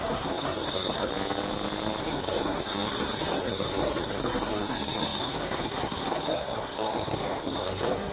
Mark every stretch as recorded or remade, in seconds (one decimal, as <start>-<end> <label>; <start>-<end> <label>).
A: 0.0-1.1 remade; 1.1-2.0 recorded; 2.0-8.1 remade